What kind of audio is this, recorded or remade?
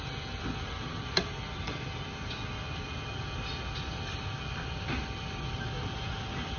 recorded